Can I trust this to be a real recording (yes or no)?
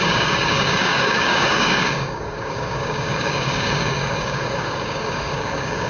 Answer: no